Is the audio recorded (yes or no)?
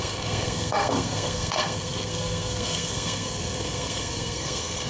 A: no